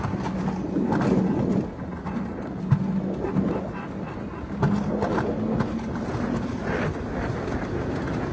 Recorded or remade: recorded